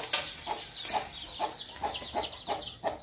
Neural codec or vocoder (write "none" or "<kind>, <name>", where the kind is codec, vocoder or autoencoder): none